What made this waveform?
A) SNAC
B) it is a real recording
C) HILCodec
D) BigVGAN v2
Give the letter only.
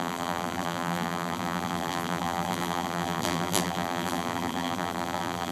D